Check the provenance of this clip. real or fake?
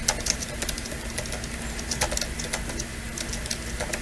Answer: real